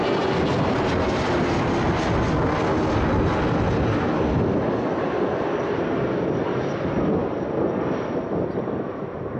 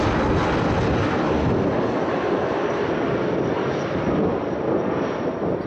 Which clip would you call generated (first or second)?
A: second